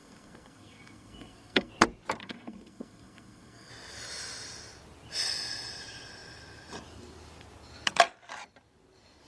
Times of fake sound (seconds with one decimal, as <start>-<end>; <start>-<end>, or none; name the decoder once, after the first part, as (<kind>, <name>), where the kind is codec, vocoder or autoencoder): 0.0-1.7 (codec, SNAC); 2.2-3.7